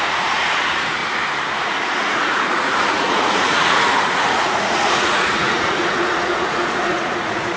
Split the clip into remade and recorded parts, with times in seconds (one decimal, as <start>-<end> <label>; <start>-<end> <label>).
0.0-1.0 remade; 1.0-1.6 recorded; 1.6-7.6 remade